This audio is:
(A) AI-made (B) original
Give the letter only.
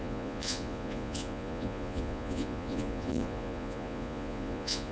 A